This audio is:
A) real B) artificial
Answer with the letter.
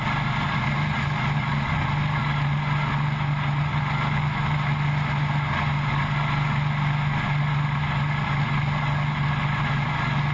A